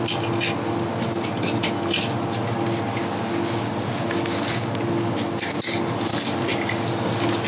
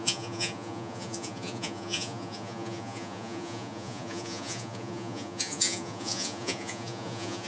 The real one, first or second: first